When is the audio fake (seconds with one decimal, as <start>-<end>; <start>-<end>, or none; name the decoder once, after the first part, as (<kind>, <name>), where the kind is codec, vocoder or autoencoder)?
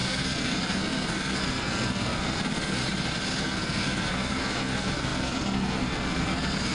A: 0.0-2.8 (codec, SNAC); 3.4-6.7